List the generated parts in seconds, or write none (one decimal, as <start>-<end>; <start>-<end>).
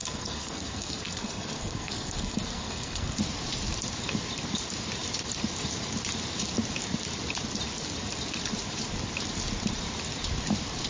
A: 0.0-3.2